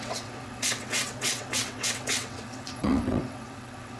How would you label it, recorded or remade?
remade